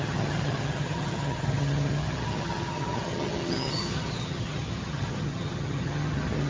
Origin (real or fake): fake